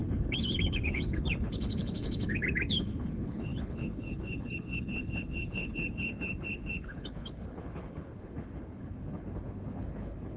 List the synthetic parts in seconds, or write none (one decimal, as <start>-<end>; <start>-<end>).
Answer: 0.0-10.4